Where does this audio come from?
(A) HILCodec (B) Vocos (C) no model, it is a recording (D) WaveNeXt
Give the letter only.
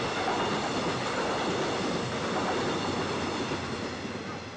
C